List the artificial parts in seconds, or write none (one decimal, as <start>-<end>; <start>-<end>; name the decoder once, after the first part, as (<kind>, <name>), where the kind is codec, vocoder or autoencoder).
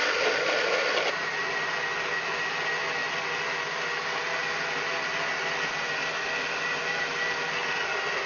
none